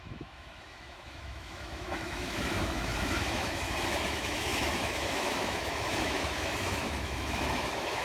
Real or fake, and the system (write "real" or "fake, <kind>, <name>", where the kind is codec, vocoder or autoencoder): fake, autoencoder, DAC-VAE